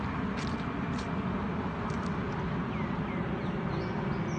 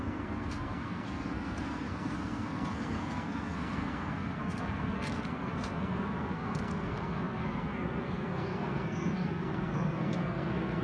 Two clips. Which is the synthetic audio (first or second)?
second